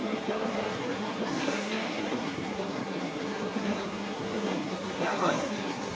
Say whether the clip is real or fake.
fake